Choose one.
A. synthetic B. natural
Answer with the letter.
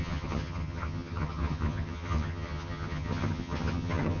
A